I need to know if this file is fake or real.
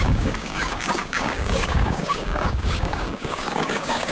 fake